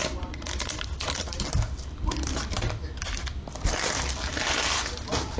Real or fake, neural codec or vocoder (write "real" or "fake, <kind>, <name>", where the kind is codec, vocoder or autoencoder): real